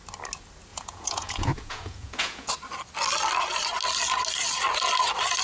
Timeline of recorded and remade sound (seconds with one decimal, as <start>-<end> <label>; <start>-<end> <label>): 0.0-0.7 recorded; 0.7-2.5 remade; 2.5-5.4 recorded